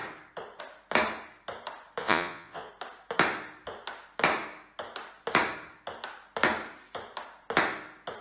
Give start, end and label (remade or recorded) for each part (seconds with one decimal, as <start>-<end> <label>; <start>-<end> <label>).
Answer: 0.0-2.0 recorded; 2.0-2.7 remade; 2.7-8.2 recorded